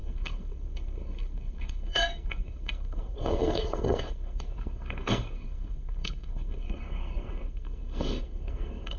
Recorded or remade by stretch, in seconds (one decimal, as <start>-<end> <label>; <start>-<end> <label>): 0.0-9.0 remade